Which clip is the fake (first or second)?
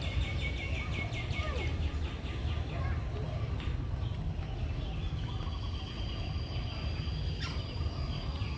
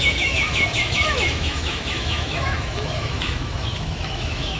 second